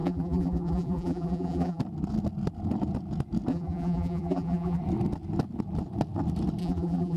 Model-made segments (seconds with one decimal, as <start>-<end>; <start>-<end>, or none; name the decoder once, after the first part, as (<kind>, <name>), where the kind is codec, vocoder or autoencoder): 0.0-1.8 (vocoder, BigVGAN v2); 3.5-4.8; 6.6-7.2